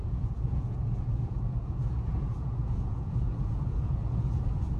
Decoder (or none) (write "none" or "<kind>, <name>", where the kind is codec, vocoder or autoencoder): vocoder, Vocos